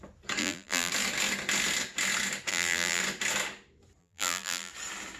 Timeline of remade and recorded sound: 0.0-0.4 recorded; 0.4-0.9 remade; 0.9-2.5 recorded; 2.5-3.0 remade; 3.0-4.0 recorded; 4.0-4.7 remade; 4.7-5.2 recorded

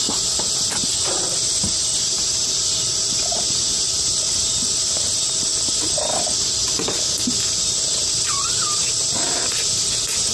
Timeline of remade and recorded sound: 0.0-5.5 remade; 5.5-8.5 recorded; 8.5-10.3 remade

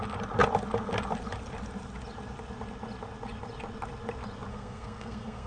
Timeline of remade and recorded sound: 0.0-4.5 recorded; 4.5-5.5 remade

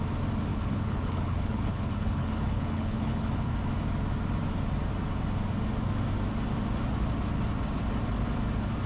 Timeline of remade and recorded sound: 0.0-0.5 recorded; 0.5-3.5 remade; 3.5-8.9 recorded